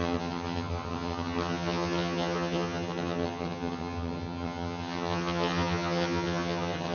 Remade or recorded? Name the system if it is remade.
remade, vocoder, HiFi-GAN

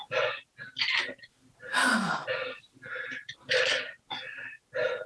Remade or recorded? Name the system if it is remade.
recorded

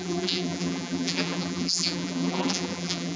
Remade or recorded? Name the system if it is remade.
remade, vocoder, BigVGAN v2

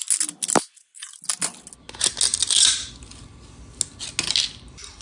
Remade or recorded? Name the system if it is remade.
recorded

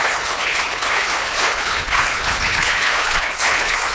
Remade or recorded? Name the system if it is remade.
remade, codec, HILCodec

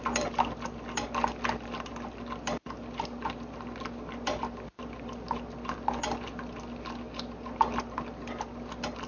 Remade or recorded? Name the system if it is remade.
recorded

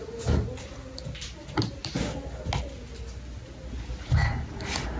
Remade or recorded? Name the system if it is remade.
recorded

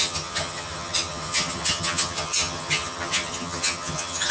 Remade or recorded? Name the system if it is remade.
remade, vocoder, HiFi-GAN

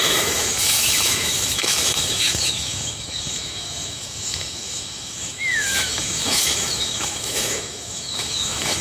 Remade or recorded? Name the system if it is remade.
remade, autoencoder, DAC-VAE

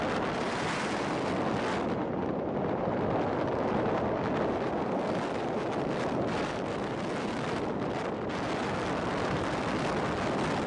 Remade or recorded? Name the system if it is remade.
recorded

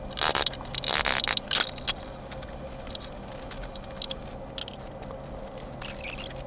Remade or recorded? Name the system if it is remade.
recorded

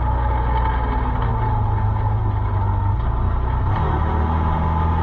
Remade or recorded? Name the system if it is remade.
recorded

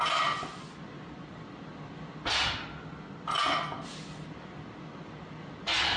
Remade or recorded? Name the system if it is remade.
recorded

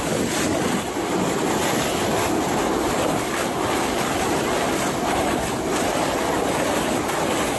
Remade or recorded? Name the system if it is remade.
recorded